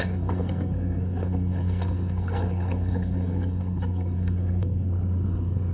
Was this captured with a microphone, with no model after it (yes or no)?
no